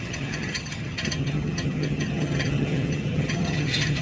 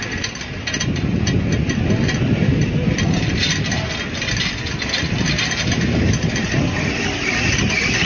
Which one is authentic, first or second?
second